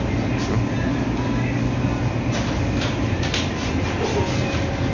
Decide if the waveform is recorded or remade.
recorded